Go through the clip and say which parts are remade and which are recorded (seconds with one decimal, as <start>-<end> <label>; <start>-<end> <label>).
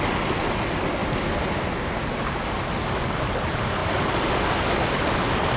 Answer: 0.0-5.6 recorded